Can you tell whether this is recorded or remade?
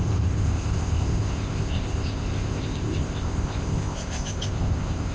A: remade